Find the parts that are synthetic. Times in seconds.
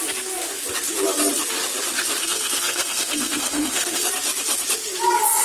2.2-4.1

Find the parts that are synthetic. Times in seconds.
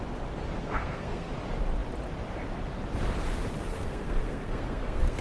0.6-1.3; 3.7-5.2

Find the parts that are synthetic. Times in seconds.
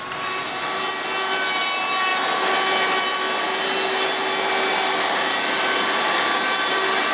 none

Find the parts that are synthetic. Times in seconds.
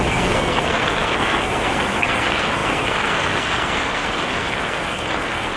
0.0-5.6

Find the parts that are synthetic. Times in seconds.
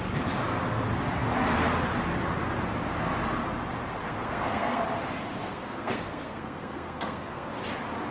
4.0-4.8; 5.4-7.5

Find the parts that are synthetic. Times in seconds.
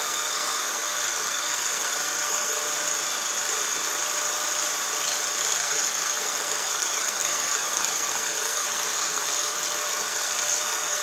0.0-2.6; 5.4-11.0